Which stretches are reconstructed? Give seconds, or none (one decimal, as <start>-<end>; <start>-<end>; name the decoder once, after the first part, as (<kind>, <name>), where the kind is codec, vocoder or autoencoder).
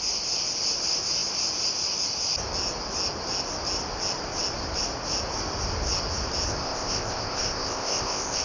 6.5-8.4 (codec, ZipCodec)